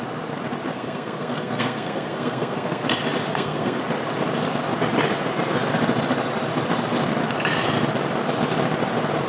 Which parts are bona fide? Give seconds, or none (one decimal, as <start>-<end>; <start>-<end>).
0.0-0.7; 2.9-3.3; 3.8-9.3